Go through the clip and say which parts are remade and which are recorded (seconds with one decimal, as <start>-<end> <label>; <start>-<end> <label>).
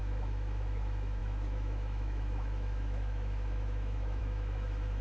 0.0-5.0 remade